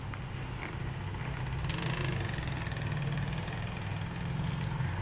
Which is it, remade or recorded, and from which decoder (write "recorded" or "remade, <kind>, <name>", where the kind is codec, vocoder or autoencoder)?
recorded